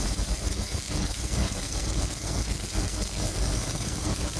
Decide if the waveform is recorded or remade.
remade